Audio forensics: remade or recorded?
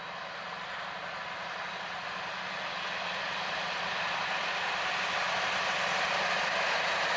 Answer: recorded